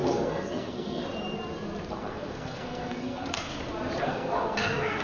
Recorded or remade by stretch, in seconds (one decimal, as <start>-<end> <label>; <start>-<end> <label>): 0.0-1.0 remade; 1.0-1.9 recorded; 1.9-3.5 remade; 3.5-4.0 recorded; 4.0-5.0 remade